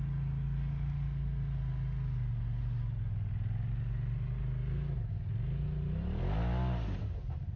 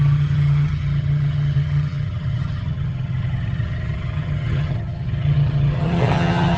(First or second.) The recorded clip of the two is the first